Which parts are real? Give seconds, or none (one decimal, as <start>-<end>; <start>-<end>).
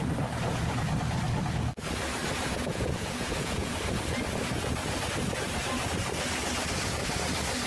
0.0-2.7; 3.8-7.7